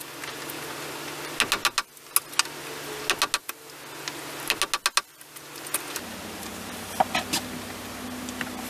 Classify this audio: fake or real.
real